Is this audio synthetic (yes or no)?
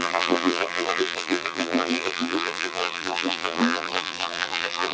yes